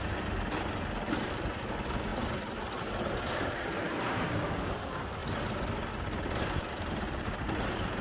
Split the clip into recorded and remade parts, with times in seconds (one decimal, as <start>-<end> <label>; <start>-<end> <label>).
0.0-2.1 remade; 2.1-2.9 recorded; 2.9-5.2 remade; 5.2-6.2 recorded; 6.2-8.0 remade